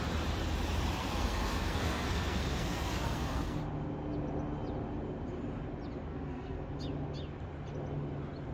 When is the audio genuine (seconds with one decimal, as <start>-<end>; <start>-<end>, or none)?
0.0-1.0; 3.6-6.1; 6.7-8.5